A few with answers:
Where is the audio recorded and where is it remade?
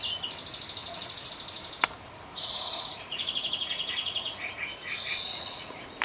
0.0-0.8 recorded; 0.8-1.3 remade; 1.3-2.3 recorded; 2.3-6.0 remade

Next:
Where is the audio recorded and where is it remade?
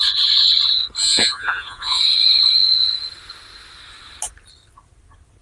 0.0-1.0 recorded; 1.0-2.0 remade; 2.0-5.4 recorded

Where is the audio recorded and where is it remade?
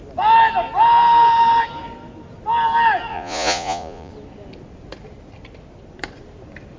0.0-3.1 recorded; 3.1-4.1 remade; 4.1-6.8 recorded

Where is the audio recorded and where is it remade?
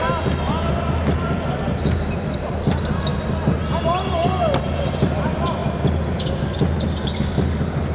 0.0-7.9 recorded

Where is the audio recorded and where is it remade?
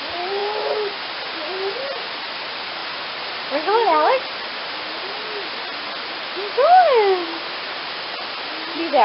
0.0-9.0 recorded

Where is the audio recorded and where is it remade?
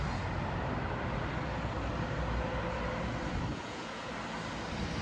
0.0-3.5 recorded; 3.5-4.1 remade; 4.1-5.0 recorded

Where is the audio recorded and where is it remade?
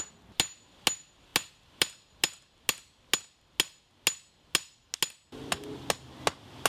0.0-6.7 recorded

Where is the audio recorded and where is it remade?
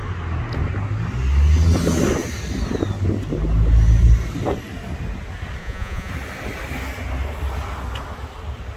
0.0-5.6 recorded; 5.6-6.1 remade; 6.1-8.8 recorded